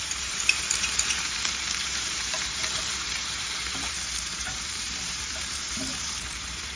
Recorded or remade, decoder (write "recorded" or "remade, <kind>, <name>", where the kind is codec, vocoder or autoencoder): remade, vocoder, BigVGAN v2